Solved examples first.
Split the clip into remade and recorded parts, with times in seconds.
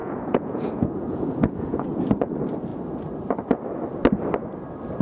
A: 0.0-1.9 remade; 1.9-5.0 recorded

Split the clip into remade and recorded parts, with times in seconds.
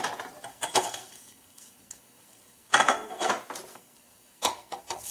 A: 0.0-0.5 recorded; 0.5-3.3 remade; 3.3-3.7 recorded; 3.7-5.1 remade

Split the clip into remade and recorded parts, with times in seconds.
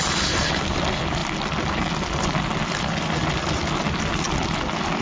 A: 0.0-5.0 recorded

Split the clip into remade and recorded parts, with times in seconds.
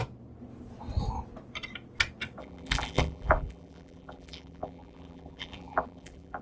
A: 0.0-2.4 recorded; 2.4-6.4 remade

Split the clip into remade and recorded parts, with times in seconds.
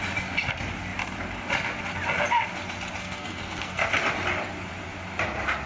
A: 0.0-3.0 recorded; 3.0-3.9 remade; 3.9-5.7 recorded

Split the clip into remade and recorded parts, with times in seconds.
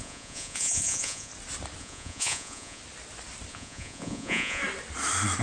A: 0.0-1.3 remade; 1.3-1.8 recorded; 1.8-2.8 remade; 2.8-3.5 recorded; 3.5-4.6 remade; 4.6-5.4 recorded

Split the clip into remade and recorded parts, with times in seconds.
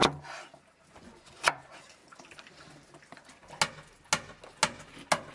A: 0.0-0.9 recorded; 0.9-2.0 remade; 2.0-5.3 recorded